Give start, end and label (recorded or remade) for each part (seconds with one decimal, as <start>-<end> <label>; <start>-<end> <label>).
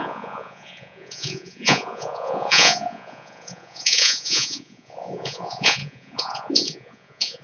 0.0-7.4 remade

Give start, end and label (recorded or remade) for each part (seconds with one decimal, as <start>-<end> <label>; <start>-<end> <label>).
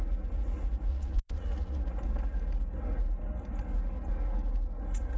0.0-0.9 recorded; 0.9-1.8 remade; 1.8-5.2 recorded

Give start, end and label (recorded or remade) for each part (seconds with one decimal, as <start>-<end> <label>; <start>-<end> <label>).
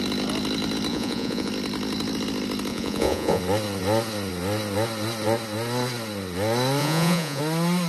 0.0-0.9 recorded; 0.9-1.5 remade; 1.5-2.7 recorded; 2.7-3.4 remade; 3.4-6.8 recorded; 6.8-7.4 remade; 7.4-7.9 recorded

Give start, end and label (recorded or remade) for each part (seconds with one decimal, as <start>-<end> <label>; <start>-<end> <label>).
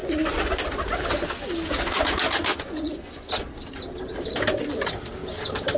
0.0-0.5 remade; 0.5-2.5 recorded; 2.5-3.3 remade; 3.3-5.8 recorded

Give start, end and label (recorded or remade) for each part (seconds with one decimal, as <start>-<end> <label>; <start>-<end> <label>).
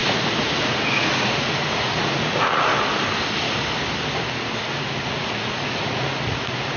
0.0-1.0 recorded; 1.0-2.7 remade; 2.7-4.6 recorded; 4.6-6.8 remade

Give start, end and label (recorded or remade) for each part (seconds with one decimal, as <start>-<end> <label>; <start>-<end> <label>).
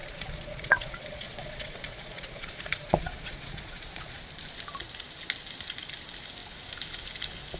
0.0-4.2 remade; 4.2-7.6 recorded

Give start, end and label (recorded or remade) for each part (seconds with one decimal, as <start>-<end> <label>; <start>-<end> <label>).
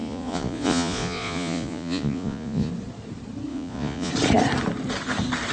0.0-2.7 remade; 2.7-3.5 recorded; 3.5-4.1 remade; 4.1-5.5 recorded